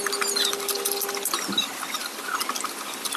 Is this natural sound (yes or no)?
yes